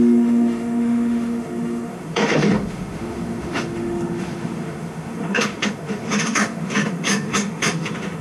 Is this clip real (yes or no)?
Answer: no